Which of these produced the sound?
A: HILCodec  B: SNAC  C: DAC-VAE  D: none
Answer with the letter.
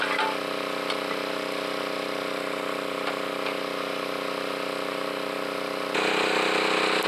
D